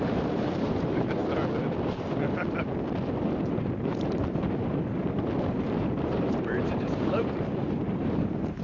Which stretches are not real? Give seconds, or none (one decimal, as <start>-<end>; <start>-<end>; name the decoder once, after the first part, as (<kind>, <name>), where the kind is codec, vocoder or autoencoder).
0.0-1.2 (vocoder, BigVGAN v2); 3.4-8.6